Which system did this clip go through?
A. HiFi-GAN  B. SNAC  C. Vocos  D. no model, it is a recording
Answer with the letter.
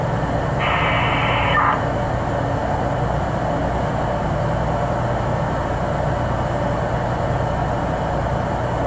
D